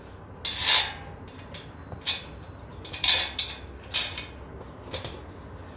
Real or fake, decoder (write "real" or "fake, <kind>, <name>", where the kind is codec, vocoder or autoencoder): real